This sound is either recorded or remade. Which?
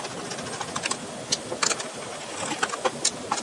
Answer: recorded